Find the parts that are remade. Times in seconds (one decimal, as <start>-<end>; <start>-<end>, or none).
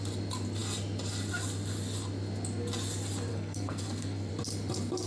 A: 3.3-4.3